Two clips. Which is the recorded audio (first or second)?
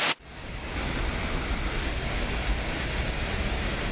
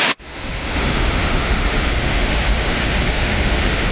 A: first